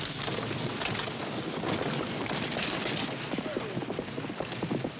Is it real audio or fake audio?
real